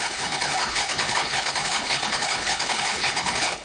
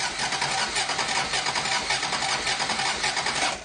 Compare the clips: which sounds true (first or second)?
second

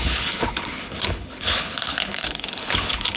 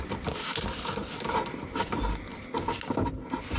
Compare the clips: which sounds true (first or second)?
second